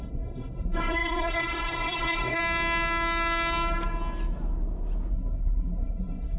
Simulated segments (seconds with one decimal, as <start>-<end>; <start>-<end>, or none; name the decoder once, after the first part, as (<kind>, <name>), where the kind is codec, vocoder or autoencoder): 0.0-2.4 (codec, SNAC); 5.1-6.4